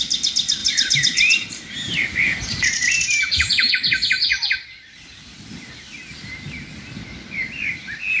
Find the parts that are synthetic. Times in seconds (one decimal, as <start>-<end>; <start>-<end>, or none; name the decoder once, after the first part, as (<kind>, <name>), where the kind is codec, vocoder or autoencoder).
0.6-3.7 (vocoder, BigVGAN v2)